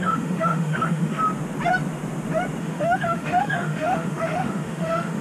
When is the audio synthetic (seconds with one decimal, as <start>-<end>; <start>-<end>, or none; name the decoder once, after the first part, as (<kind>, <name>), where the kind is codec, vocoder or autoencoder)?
0.0-1.2 (autoencoder, DAC-VAE); 2.6-5.2